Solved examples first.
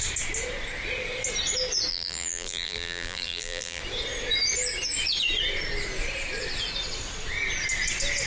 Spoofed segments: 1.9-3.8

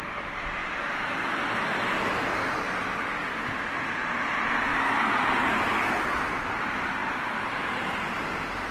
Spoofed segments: 0.6-1.3

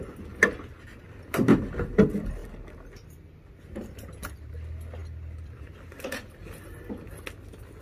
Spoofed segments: 5.0-5.6

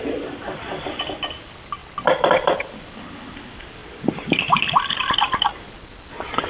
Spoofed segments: 0.4-1.0; 1.8-3.1; 3.8-6.0

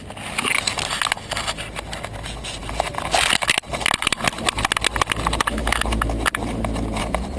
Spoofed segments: none

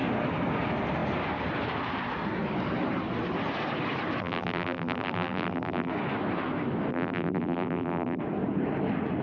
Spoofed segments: 4.2-5.9; 6.9-8.2

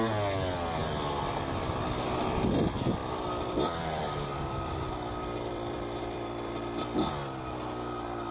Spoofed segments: 3.0-7.1

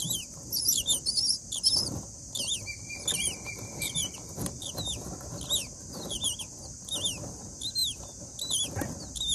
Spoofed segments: 2.2-4.6